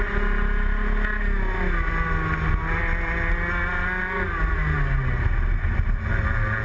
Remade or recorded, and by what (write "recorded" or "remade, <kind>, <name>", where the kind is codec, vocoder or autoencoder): recorded